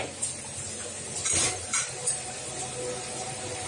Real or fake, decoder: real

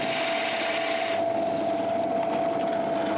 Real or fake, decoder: real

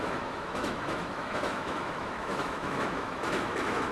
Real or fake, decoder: fake, autoencoder, DAC-VAE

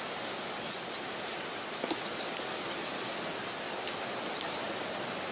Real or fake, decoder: real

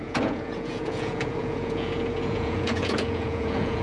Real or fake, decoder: fake, vocoder, Vocos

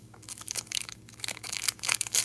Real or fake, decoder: fake, codec, DAC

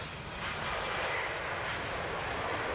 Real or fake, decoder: real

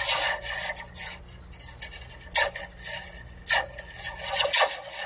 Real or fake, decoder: real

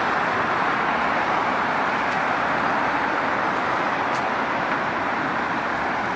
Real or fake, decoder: fake, vocoder, BigVGAN v2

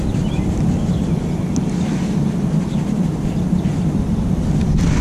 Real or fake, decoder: real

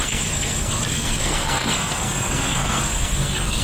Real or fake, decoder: fake, codec, SNAC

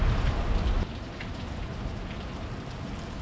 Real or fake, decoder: real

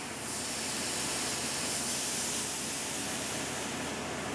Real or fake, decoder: real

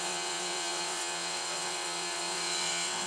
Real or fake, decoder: fake, vocoder, WaveNeXt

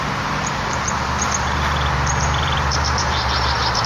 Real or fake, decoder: fake, vocoder, BigVGAN v2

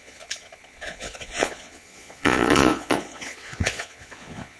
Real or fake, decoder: fake, vocoder, Vocos